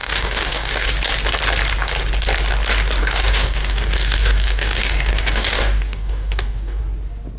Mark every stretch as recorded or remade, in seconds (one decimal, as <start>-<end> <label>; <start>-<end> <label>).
0.0-0.9 remade; 0.9-3.0 recorded; 3.0-6.8 remade; 6.8-7.4 recorded